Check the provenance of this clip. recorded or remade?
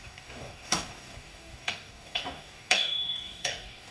remade